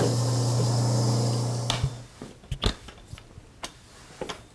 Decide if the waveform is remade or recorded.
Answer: recorded